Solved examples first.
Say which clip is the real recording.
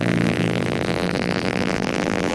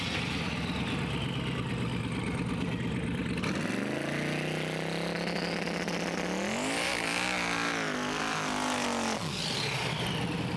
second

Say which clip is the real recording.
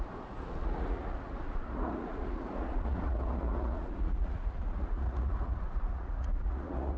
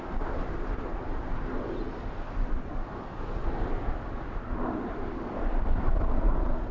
second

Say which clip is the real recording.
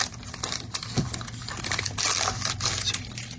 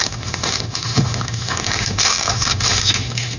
first